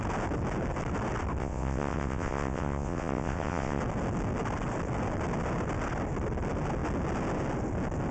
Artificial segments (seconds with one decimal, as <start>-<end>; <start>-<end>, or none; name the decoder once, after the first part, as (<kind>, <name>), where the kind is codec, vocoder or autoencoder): 1.4-3.8 (vocoder, WaveNeXt)